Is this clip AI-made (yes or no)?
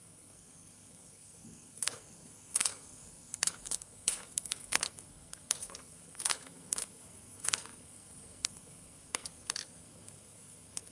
yes